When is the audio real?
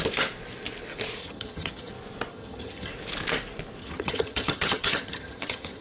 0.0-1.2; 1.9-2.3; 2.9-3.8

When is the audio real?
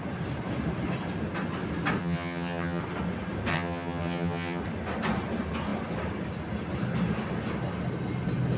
0.0-2.0; 2.8-3.5; 4.6-8.6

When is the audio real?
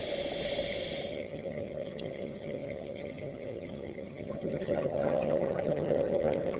0.0-1.1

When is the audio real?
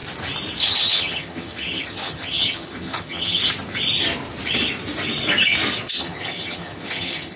0.0-0.6; 3.4-5.9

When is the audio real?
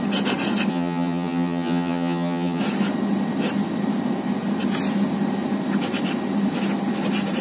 0.0-0.7; 2.6-7.4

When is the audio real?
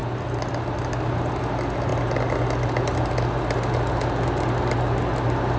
0.0-5.6